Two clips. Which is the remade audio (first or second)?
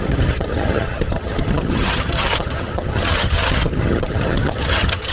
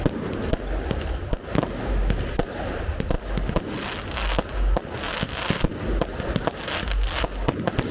first